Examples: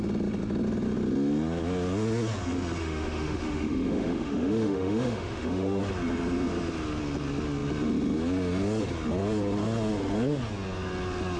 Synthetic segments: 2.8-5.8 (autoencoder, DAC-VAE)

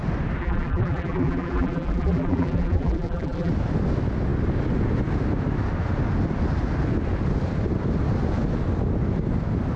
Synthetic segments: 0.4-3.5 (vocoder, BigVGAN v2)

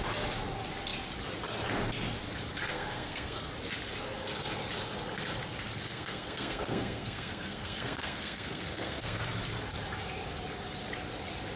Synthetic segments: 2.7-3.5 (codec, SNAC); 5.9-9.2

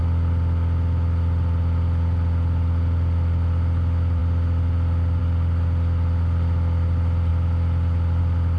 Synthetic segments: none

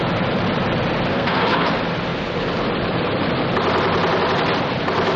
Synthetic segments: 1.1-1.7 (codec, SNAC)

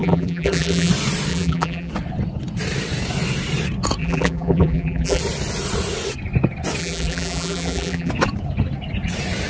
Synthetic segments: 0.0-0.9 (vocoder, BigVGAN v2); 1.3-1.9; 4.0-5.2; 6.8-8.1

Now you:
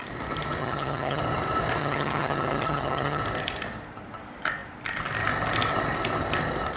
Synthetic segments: 0.6-1.2 (vocoder, HiFi-GAN); 1.8-3.2